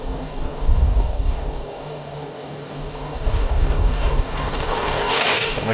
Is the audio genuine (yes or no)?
no